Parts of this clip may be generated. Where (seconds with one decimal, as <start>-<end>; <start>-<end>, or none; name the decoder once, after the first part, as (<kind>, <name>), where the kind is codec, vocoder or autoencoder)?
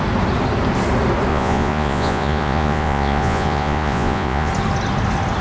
1.3-4.5 (vocoder, Vocos)